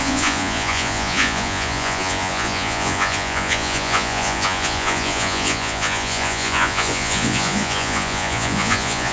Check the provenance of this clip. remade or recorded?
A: remade